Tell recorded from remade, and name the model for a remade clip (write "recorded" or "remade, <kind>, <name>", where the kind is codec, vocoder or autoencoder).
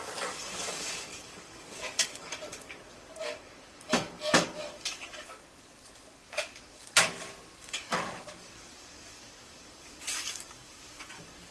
remade, codec, DAC